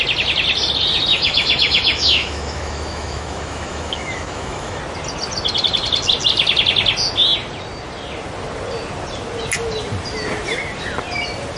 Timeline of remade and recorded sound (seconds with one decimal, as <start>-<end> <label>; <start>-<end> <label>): 0.0-1.1 recorded; 1.1-4.8 remade; 4.8-11.6 recorded